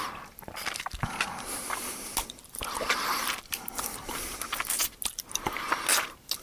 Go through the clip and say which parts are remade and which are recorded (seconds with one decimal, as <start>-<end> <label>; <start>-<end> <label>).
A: 0.0-6.4 recorded